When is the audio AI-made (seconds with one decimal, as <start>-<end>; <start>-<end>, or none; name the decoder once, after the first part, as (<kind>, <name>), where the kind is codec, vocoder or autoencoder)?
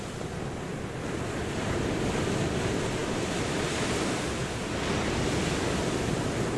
none